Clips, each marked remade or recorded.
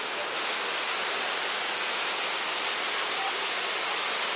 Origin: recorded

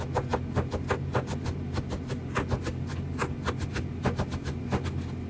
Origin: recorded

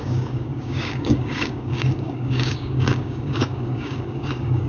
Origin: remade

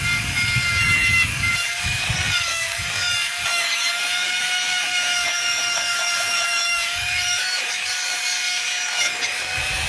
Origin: remade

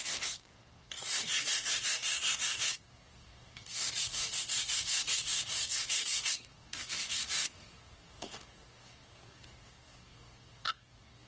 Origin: remade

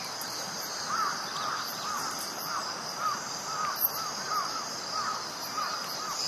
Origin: recorded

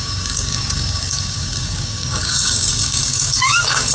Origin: remade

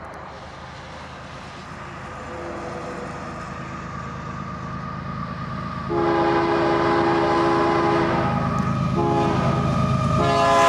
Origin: recorded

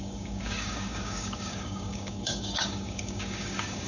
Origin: remade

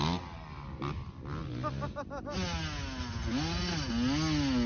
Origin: recorded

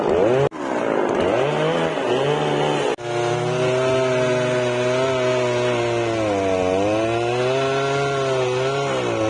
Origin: recorded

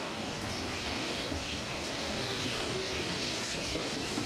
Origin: remade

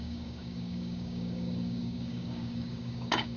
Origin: remade